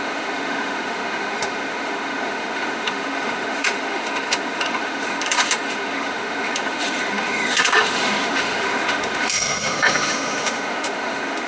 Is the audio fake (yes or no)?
yes